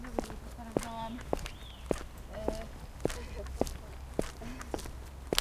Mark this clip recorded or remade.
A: recorded